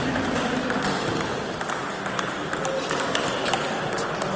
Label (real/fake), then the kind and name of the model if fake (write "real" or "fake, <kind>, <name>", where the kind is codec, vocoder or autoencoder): real